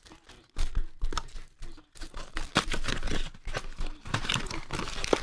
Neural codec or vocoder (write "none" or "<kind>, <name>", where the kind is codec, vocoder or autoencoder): none